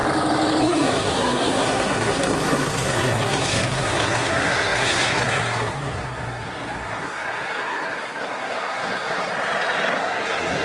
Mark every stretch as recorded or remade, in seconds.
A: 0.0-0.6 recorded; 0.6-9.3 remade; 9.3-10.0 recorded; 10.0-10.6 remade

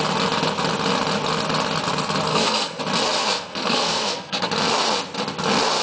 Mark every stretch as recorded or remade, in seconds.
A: 0.0-2.3 recorded; 2.3-2.8 remade; 2.8-3.2 recorded; 3.2-4.5 remade; 4.5-5.8 recorded

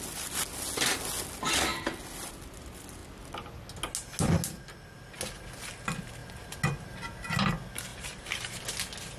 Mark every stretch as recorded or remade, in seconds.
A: 0.0-7.9 recorded; 7.9-8.6 remade; 8.6-9.2 recorded